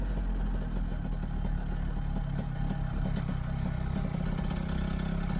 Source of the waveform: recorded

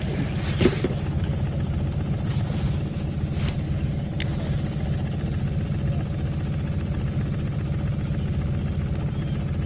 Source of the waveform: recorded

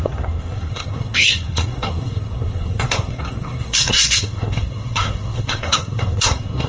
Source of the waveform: remade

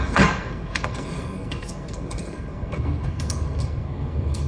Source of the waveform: remade